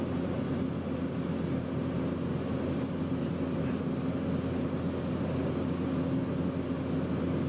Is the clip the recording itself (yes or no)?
yes